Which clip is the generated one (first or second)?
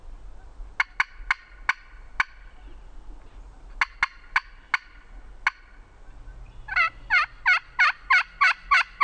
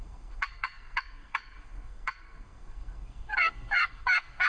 second